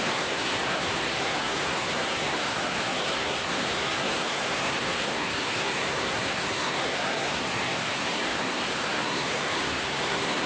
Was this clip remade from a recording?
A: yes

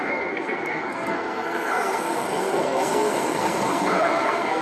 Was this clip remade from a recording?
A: yes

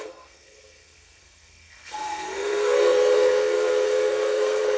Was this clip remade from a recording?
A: yes